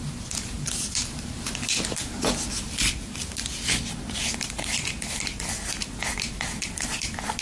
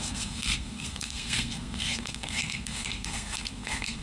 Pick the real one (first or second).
first